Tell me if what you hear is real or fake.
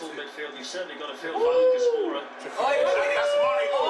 real